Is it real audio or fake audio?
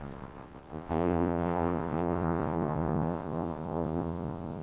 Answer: fake